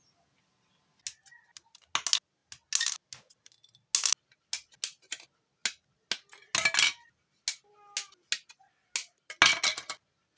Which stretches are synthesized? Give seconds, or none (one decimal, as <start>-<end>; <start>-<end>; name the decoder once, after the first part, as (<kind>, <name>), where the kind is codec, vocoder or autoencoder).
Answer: none